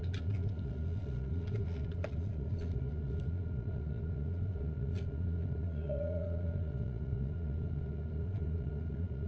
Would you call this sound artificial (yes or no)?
yes